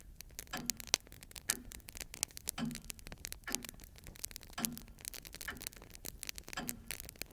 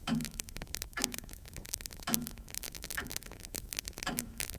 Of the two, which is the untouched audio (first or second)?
first